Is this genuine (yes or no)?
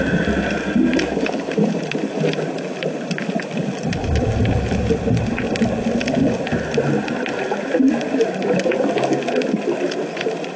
yes